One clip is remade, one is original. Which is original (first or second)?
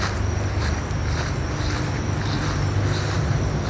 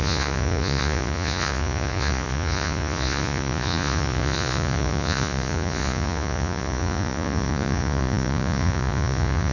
first